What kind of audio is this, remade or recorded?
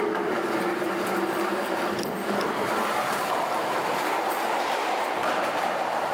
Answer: remade